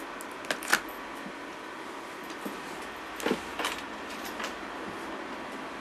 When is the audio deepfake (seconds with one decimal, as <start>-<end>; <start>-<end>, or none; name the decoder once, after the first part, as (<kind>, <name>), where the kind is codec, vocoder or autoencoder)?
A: 3.5-4.6 (vocoder, BigVGAN v2)